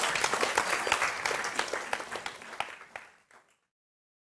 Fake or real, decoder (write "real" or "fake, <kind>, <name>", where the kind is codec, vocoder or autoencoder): real